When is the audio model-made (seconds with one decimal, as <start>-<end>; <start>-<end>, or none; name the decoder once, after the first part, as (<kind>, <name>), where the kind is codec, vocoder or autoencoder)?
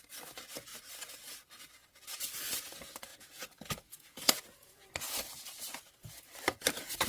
3.1-4.9 (vocoder, Vocos)